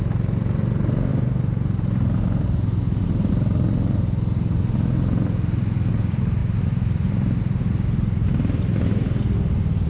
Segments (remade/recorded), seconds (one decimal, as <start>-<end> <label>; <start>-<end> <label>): 0.0-1.1 recorded; 1.1-3.3 remade; 3.3-6.4 recorded; 6.4-7.6 remade; 7.6-9.9 recorded